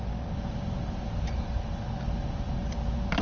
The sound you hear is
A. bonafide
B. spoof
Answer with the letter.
A